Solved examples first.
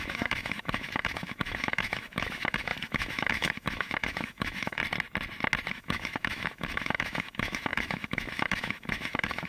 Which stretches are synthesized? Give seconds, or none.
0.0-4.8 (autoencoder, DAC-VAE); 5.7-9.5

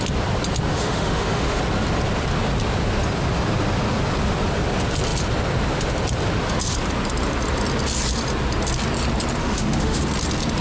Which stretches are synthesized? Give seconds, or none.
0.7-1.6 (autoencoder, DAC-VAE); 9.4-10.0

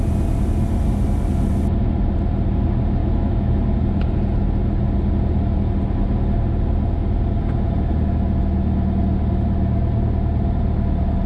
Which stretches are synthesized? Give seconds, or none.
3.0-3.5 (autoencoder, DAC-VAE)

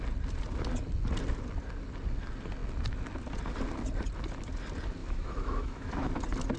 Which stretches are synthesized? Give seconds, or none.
5.0-6.1 (autoencoder, DAC-VAE)